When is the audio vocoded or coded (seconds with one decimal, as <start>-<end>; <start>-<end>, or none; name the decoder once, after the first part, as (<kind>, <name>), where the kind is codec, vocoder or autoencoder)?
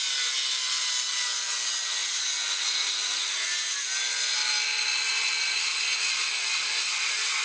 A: none